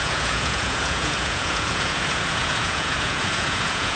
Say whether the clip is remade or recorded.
remade